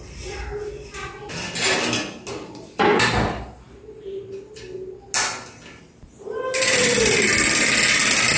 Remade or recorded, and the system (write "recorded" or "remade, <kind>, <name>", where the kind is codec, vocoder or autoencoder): recorded